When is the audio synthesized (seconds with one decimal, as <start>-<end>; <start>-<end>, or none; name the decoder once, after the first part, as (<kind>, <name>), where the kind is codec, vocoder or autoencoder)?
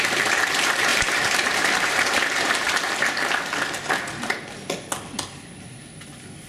0.9-2.0 (vocoder, BigVGAN v2)